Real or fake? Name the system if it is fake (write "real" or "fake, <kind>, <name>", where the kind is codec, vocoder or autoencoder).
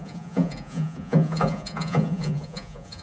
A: fake, vocoder, Vocos